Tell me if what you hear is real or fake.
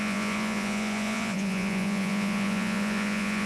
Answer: fake